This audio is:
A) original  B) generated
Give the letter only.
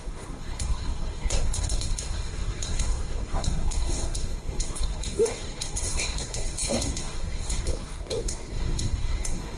B